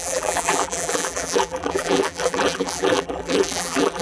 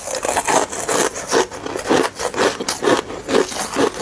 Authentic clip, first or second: second